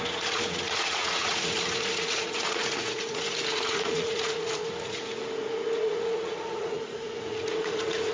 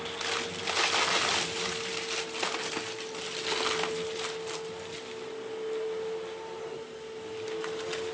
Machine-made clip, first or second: first